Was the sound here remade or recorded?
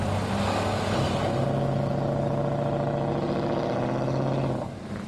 recorded